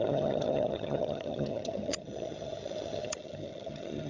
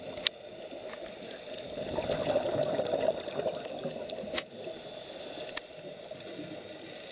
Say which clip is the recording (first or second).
second